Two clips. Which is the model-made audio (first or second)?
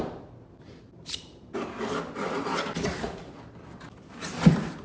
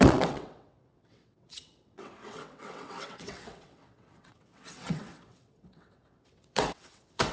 second